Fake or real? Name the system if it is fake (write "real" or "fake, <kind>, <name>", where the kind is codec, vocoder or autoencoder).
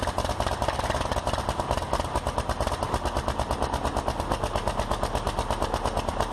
real